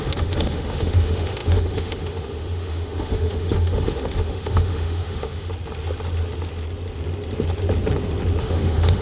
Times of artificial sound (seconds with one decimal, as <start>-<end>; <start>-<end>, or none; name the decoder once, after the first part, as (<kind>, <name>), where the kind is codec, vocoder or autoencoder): 0.0-5.5 (autoencoder, DAC-VAE); 8.4-9.0